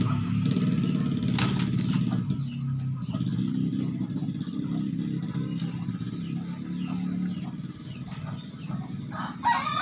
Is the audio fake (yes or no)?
no